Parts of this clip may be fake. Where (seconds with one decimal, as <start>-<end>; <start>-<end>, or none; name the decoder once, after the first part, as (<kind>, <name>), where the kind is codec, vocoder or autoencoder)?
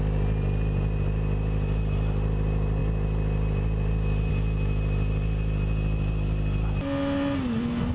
none